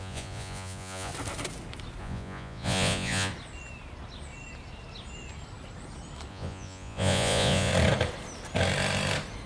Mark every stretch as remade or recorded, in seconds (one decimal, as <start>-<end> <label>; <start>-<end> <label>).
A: 0.0-1.1 remade; 1.1-2.0 recorded; 2.0-3.3 remade; 3.3-6.3 recorded; 6.3-7.7 remade; 7.7-9.5 recorded